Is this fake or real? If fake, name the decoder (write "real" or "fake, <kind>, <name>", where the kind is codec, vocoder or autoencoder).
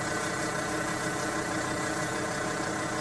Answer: real